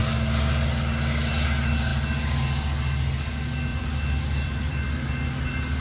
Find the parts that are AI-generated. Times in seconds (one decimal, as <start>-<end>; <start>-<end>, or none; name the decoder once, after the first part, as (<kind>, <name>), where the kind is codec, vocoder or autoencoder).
3.7-5.1 (vocoder, BigVGAN v2)